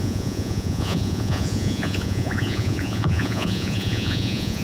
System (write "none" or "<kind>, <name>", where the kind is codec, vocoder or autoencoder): vocoder, Vocos